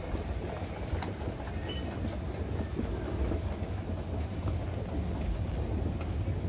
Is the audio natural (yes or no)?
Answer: yes